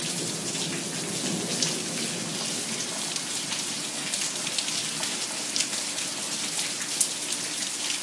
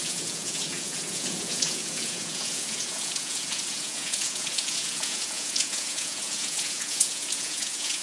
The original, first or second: first